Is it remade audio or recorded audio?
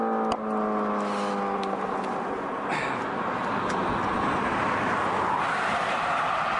recorded